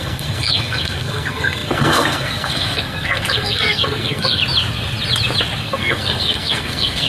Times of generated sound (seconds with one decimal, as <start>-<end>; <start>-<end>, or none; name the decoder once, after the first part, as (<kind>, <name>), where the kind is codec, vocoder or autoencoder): 0.0-4.4 (codec, SNAC); 5.6-7.1